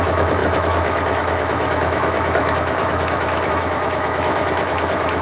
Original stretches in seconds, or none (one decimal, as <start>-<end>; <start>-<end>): none